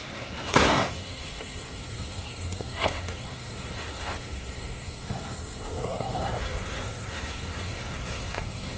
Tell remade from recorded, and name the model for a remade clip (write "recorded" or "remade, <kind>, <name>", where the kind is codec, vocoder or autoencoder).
remade, codec, SNAC